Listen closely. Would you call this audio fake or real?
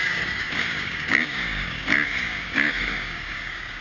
fake